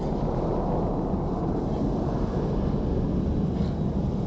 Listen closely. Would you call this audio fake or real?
real